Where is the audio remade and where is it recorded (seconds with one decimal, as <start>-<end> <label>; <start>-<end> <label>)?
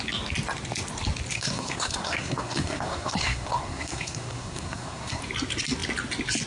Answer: 0.0-1.3 recorded; 1.3-5.2 remade; 5.2-6.5 recorded